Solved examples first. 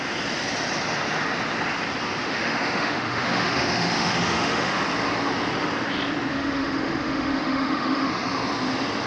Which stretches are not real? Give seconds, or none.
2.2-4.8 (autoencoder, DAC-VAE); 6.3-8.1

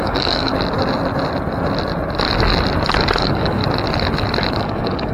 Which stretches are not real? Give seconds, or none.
0.0-0.5 (codec, DAC); 3.2-3.6; 4.5-5.1

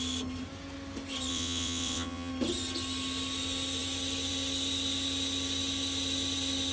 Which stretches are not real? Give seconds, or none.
1.3-2.3 (vocoder, WaveNeXt)